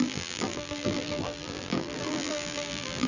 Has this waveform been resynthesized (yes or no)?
yes